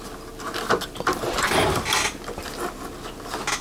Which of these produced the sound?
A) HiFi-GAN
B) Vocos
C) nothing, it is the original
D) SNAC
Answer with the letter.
C